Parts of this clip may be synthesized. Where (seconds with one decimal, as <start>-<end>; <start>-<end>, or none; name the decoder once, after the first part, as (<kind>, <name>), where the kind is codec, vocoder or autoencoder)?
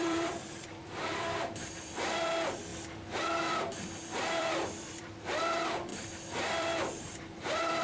0.0-2.7 (vocoder, BigVGAN v2); 3.2-7.8